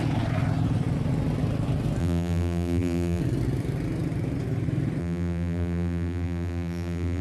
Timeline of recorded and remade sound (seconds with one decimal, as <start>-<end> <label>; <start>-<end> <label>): 0.0-2.0 recorded; 2.0-3.2 remade; 3.2-5.0 recorded; 5.0-7.2 remade